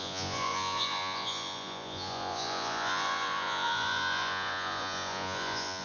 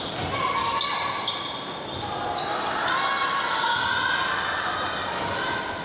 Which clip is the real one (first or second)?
second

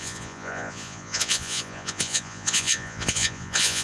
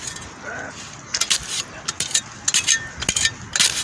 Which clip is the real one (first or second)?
second